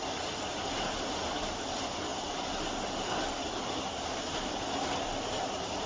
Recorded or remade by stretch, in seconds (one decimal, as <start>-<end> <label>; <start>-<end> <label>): 0.0-5.9 recorded